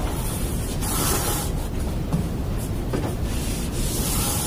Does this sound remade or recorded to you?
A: recorded